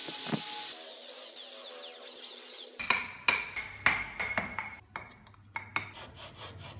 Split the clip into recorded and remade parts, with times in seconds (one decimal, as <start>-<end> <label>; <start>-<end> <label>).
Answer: 0.0-6.8 recorded